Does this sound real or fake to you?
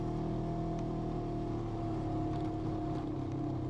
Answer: real